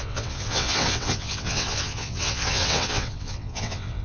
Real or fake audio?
fake